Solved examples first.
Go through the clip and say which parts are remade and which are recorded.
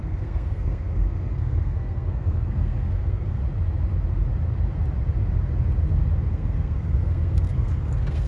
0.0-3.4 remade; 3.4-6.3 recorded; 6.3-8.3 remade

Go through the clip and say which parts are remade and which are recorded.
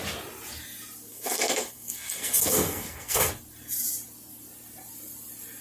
0.0-1.1 recorded; 1.1-3.3 remade; 3.3-5.6 recorded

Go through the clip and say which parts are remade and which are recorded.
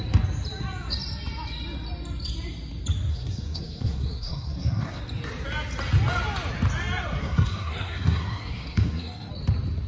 0.0-3.1 recorded; 3.1-5.0 remade; 5.0-7.2 recorded; 7.2-9.3 remade; 9.3-9.9 recorded